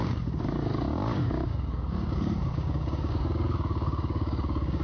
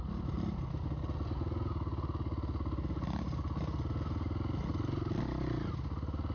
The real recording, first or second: second